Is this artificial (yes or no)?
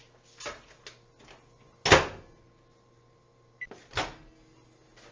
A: no